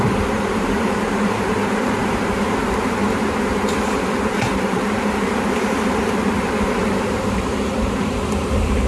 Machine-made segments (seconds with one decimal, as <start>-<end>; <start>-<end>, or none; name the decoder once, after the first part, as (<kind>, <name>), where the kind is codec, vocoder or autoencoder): 0.0-8.9 (vocoder, BigVGAN v2)